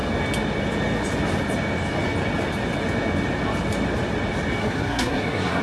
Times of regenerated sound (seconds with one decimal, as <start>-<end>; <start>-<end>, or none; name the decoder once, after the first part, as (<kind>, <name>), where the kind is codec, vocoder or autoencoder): 4.6-5.6 (codec, SNAC)